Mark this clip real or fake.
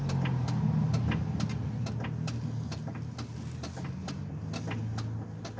real